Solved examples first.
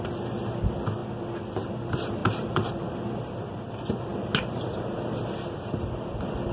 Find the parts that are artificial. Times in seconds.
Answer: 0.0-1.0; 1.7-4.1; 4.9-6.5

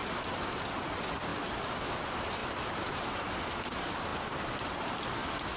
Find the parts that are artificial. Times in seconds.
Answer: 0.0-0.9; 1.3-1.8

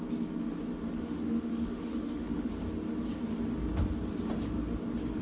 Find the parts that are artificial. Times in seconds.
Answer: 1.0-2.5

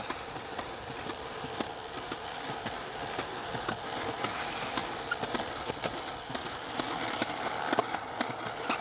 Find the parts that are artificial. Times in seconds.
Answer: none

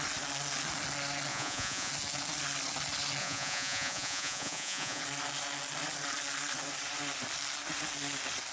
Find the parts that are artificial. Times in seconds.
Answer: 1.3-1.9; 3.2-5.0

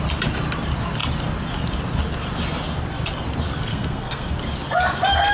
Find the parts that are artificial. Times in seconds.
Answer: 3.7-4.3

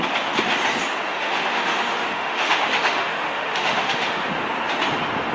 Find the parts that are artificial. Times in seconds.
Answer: 1.1-4.3